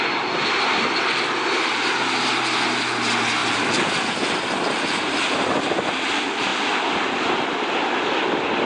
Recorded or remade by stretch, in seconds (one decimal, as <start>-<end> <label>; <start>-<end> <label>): 0.0-8.7 recorded